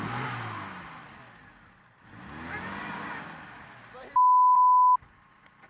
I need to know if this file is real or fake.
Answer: real